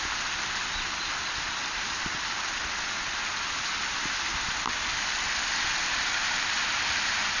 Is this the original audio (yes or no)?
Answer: yes